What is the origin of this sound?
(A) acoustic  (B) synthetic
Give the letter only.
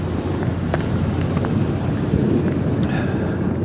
A